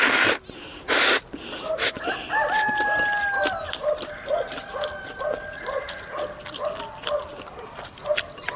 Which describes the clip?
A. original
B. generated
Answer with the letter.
A